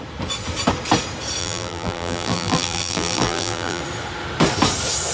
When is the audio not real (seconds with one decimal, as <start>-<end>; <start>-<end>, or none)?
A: 1.4-3.8